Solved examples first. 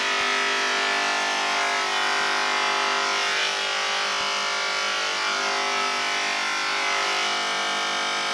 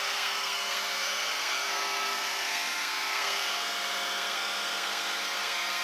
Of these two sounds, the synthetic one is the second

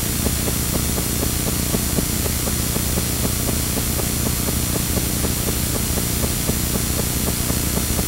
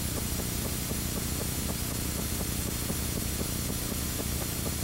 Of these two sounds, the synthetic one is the second